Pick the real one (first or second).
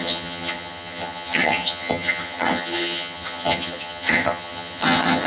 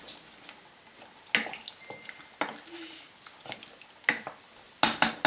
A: second